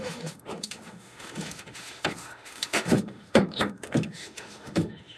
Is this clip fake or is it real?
fake